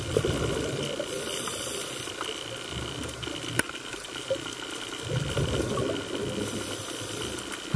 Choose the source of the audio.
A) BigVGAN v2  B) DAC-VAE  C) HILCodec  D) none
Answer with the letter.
D